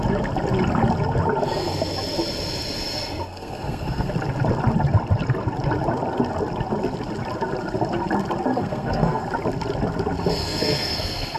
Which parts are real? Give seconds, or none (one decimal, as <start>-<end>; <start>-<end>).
0.0-3.2; 4.1-8.5; 9.2-10.4